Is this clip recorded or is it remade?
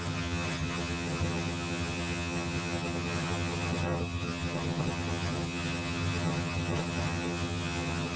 remade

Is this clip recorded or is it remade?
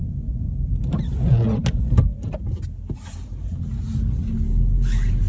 recorded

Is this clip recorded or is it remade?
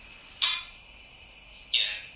recorded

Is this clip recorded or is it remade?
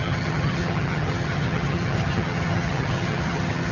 remade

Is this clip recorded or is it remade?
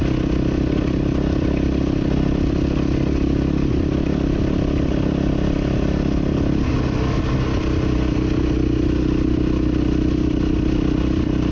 recorded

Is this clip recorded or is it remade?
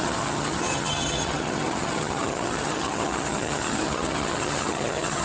remade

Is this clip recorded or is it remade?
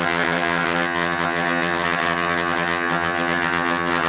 remade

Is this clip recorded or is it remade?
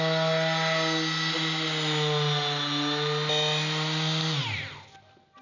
recorded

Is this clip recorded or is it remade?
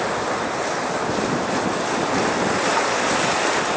recorded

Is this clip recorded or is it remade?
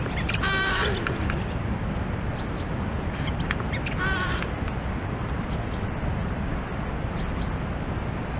recorded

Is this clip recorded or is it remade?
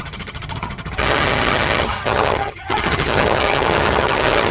remade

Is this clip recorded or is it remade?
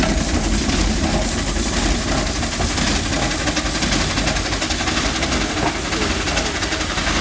recorded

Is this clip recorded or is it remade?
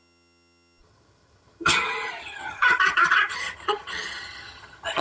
remade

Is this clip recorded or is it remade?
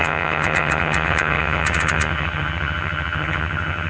remade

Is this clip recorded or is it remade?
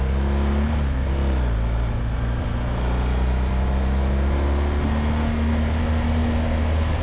recorded